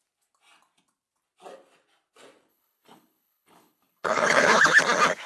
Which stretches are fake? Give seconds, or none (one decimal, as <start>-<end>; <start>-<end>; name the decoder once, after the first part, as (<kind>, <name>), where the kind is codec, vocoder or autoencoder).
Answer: 2.5-4.8 (codec, HILCodec)